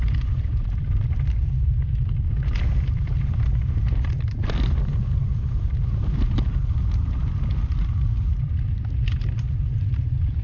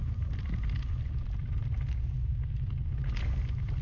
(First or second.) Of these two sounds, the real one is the second